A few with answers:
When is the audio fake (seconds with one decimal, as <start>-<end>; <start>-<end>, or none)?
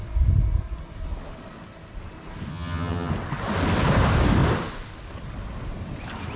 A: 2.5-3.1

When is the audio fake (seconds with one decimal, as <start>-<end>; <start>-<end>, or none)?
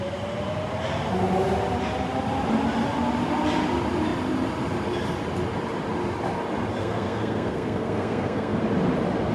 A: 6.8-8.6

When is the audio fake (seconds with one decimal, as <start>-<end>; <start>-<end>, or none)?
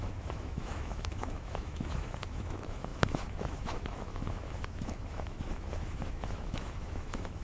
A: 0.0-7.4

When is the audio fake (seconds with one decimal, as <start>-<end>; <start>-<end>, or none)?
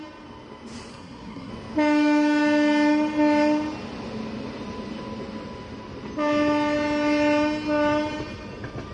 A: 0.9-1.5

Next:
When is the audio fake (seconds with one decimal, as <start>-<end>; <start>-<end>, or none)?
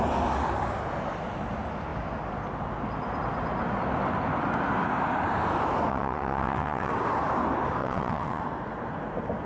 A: 5.9-6.9; 7.8-8.4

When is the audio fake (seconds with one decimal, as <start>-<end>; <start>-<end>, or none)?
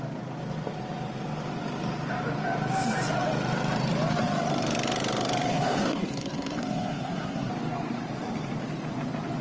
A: 5.5-7.5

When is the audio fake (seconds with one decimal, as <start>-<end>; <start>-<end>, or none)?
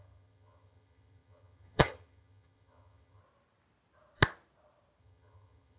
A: 0.0-3.2; 5.0-5.8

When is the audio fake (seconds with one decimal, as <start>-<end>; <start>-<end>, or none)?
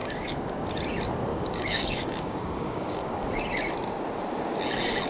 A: 0.0-0.7; 1.3-3.3